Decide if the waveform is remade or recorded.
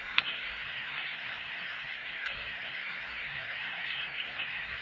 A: remade